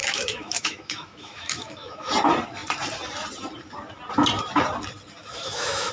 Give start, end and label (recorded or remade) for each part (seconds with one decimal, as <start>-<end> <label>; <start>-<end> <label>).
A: 0.0-2.1 remade; 2.1-5.2 recorded; 5.2-5.9 remade